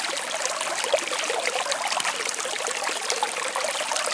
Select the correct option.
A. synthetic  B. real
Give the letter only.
B